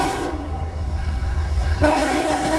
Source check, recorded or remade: remade